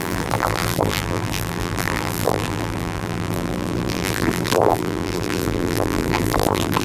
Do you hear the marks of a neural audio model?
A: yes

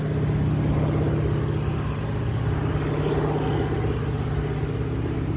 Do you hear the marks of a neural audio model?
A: no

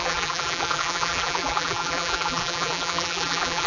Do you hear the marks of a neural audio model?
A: yes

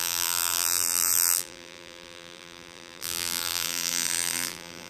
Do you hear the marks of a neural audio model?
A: yes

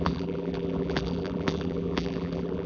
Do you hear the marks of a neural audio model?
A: yes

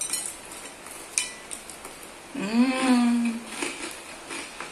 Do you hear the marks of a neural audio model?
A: no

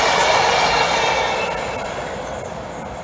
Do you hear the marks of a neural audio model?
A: no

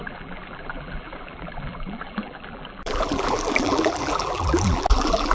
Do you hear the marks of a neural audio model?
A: yes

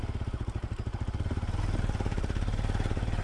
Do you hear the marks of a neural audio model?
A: yes